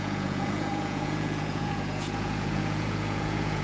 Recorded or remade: remade